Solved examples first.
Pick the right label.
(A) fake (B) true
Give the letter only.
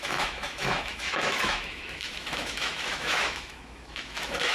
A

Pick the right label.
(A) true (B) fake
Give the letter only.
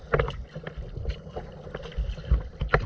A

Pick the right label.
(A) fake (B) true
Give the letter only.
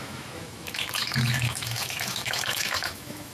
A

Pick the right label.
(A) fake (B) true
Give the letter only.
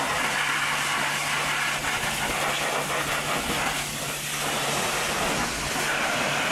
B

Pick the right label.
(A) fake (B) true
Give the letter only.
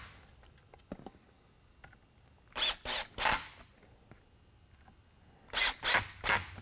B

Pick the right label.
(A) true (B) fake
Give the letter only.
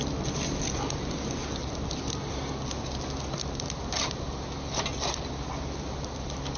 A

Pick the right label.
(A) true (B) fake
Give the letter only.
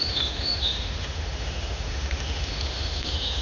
B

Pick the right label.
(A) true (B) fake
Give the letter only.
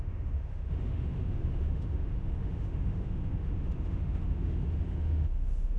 B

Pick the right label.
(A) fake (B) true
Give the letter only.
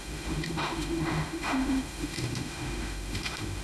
A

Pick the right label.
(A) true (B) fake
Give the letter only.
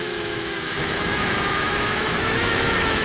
B